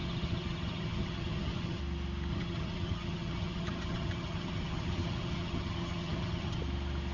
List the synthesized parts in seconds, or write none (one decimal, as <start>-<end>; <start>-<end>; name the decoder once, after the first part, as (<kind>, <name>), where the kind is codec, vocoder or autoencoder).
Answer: 0.0-1.8 (vocoder, HiFi-GAN); 2.3-6.6